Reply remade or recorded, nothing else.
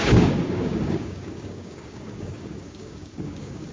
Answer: remade